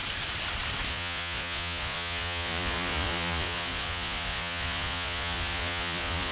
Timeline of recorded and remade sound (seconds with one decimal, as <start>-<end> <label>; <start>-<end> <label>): 0.0-0.9 recorded; 0.9-6.3 remade